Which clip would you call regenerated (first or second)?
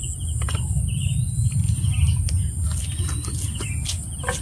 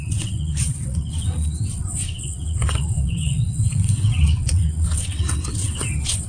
second